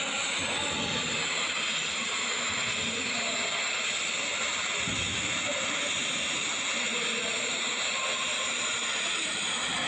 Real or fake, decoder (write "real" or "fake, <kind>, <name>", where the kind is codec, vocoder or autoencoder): real